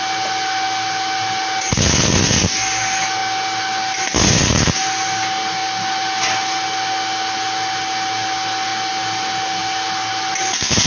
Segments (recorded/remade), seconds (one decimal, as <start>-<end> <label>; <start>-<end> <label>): 0.0-10.9 recorded